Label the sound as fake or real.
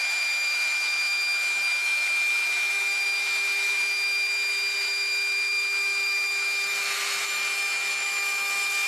fake